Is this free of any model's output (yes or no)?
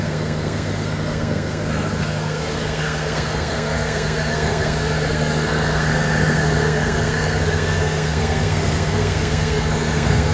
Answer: no